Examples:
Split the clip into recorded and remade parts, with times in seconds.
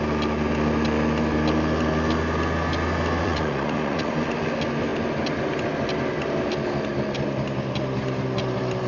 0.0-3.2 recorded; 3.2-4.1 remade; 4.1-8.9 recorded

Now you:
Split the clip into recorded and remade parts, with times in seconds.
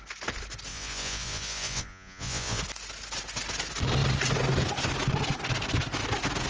0.0-0.7 recorded; 0.7-2.6 remade; 2.6-6.5 recorded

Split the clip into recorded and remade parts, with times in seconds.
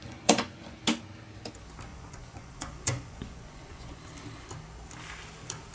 0.0-0.8 remade; 0.8-1.9 recorded; 1.9-4.0 remade; 4.0-5.7 recorded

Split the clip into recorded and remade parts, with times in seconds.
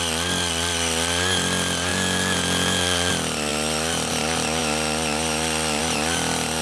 0.0-1.9 recorded; 1.9-3.1 remade; 3.1-6.6 recorded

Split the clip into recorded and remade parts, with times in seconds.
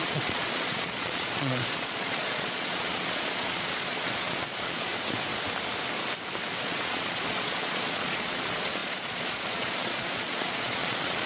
0.0-4.9 remade; 4.9-6.6 recorded; 6.6-11.3 remade